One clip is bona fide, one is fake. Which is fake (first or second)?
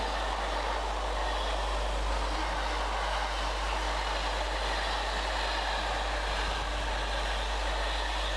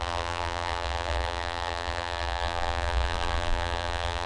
second